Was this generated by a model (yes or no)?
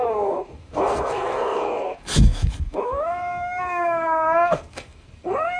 yes